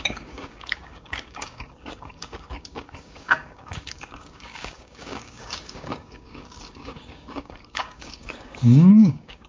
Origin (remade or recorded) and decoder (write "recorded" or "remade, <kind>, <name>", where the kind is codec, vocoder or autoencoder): remade, codec, DAC